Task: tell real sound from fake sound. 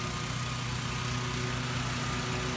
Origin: real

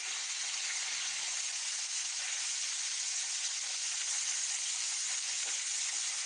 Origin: fake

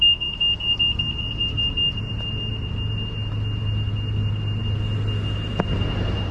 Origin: real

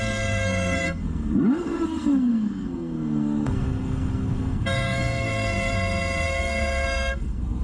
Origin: fake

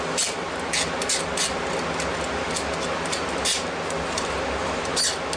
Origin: real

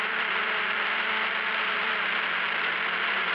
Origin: fake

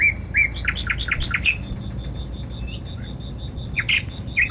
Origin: real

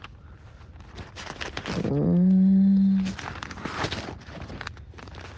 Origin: real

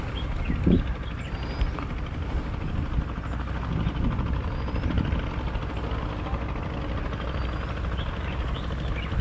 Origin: real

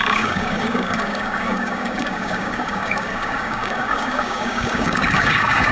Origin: fake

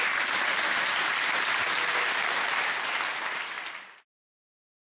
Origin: real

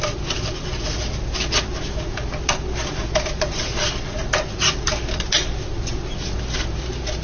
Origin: real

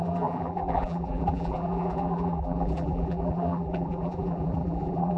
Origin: fake